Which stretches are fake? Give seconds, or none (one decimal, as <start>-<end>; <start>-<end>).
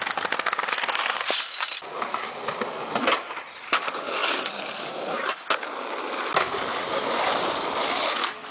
none